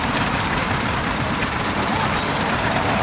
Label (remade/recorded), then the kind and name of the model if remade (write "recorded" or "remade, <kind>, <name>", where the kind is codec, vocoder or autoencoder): remade, vocoder, BigVGAN v2